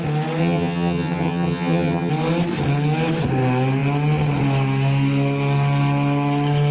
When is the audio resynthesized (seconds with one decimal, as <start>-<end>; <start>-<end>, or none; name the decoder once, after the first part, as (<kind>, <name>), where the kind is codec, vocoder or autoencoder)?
0.4-2.1 (vocoder, HiFi-GAN)